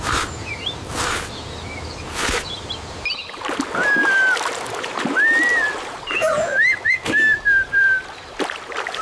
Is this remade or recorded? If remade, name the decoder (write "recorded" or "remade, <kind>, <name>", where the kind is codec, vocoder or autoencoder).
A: recorded